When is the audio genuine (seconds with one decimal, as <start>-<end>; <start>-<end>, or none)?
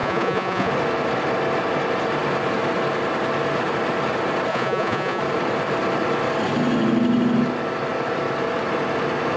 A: 0.7-4.5; 5.2-9.4